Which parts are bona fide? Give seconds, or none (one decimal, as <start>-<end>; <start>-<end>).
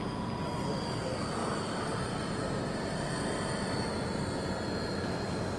0.0-1.4; 3.8-5.6